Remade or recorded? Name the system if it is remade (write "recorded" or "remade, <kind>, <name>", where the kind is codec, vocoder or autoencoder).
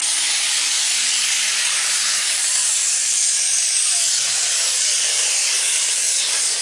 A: remade, codec, DAC